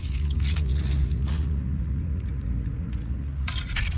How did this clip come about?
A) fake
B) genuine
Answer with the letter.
A